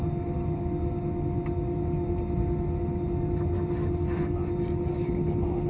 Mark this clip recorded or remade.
recorded